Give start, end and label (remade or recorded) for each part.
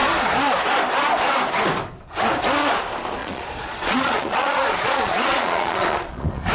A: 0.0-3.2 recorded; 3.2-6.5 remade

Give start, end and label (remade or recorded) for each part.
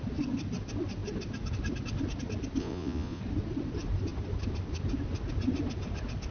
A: 0.0-2.6 recorded; 2.6-3.2 remade; 3.2-6.3 recorded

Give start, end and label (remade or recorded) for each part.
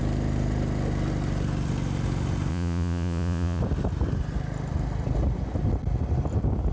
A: 0.0-2.5 recorded; 2.5-3.6 remade; 3.6-6.7 recorded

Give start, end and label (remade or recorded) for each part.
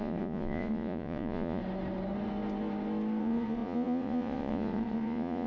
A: 0.0-1.6 remade; 1.6-3.2 recorded; 3.2-5.5 remade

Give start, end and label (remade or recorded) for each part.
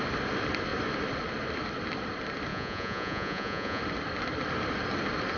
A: 0.0-2.5 recorded; 2.5-3.8 remade; 3.8-5.4 recorded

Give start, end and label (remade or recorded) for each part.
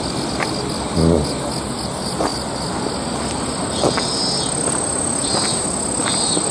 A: 0.0-6.5 recorded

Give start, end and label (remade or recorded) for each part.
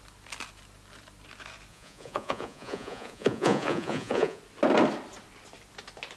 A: 0.0-1.7 recorded; 1.7-4.4 remade; 4.4-6.2 recorded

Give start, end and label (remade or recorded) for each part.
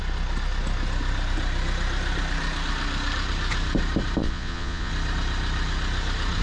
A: 0.0-4.2 recorded; 4.2-4.9 remade; 4.9-6.4 recorded